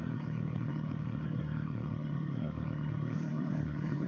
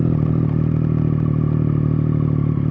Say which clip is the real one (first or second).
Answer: second